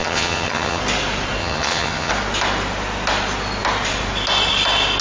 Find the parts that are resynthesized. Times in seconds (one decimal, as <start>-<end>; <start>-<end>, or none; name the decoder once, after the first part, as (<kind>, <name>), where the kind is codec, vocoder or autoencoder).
0.0-0.8 (vocoder, HiFi-GAN); 1.4-2.1